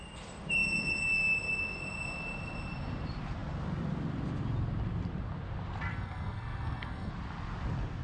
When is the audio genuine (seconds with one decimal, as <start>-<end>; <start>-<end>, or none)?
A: 0.0-5.9; 7.1-8.0